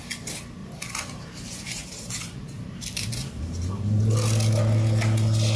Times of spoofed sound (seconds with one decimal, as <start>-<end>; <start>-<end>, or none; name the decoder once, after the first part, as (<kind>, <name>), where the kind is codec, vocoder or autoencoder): 0.6-4.0 (vocoder, BigVGAN v2)